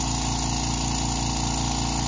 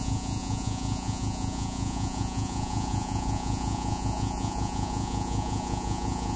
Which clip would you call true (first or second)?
first